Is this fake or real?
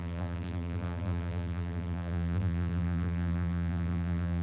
fake